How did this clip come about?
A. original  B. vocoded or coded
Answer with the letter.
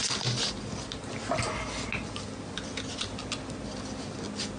A